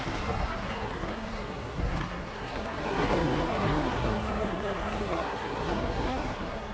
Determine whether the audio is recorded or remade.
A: remade